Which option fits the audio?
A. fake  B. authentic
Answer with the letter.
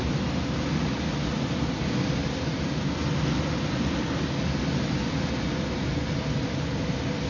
B